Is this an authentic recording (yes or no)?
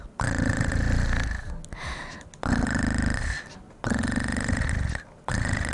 yes